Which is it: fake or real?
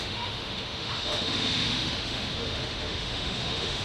fake